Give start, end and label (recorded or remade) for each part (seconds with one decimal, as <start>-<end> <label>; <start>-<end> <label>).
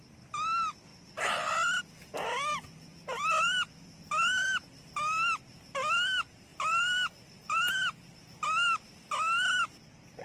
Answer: 0.0-6.5 recorded; 6.5-7.7 remade; 7.7-10.2 recorded